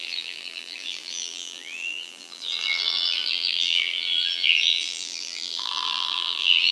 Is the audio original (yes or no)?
no